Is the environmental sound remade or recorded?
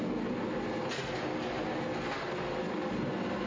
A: recorded